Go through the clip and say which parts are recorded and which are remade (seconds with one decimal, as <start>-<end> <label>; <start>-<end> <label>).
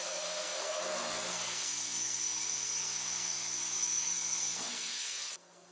0.0-5.7 remade